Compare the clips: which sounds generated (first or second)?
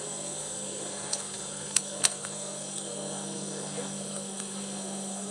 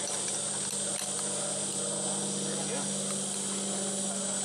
first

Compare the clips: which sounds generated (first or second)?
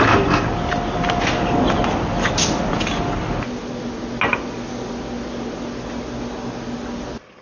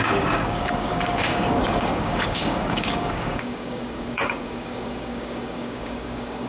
second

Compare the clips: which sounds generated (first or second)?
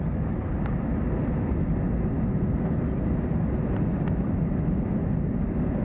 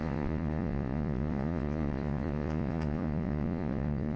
second